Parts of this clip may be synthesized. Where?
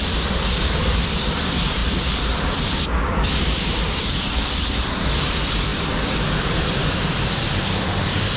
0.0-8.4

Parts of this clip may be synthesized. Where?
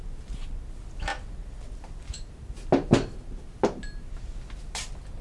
none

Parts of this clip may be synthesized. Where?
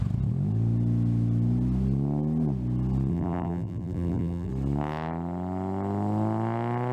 3.1-4.5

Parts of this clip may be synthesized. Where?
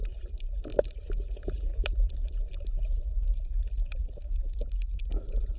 0.0-3.0; 3.7-5.6